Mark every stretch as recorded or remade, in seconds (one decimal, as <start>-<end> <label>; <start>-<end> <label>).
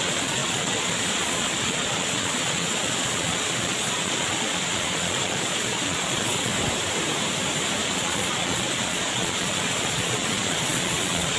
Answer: 0.0-6.5 remade; 6.5-7.8 recorded; 7.8-11.4 remade